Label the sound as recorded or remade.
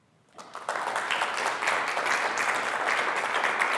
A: recorded